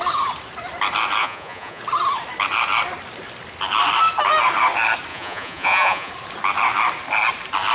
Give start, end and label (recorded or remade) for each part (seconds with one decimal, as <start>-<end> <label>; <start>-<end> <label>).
0.0-1.2 recorded; 1.2-1.8 remade; 1.8-5.1 recorded; 5.1-6.1 remade; 6.1-7.7 recorded

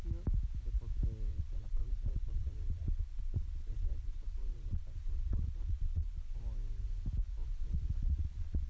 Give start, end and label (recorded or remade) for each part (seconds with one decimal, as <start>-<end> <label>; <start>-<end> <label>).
0.0-1.3 recorded; 1.3-6.4 remade; 6.4-7.4 recorded; 7.4-8.7 remade

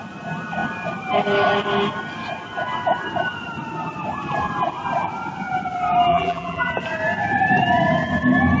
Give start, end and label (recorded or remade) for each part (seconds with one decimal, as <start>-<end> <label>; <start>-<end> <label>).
0.0-6.1 recorded; 6.1-6.7 remade; 6.7-8.6 recorded